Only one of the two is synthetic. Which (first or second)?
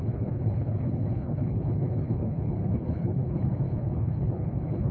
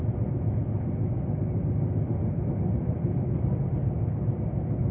first